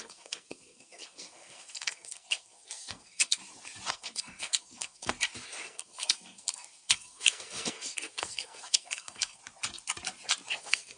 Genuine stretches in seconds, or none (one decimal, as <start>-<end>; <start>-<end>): 3.4-3.9; 5.1-5.6; 9.4-10.6